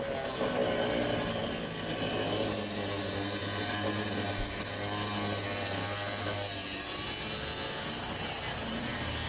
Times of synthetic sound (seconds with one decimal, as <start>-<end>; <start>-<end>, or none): none